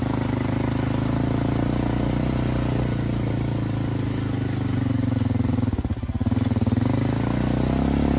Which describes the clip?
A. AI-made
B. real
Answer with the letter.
B